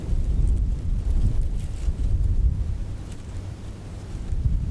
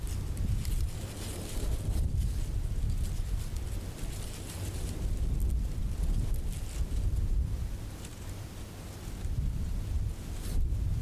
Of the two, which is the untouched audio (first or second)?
second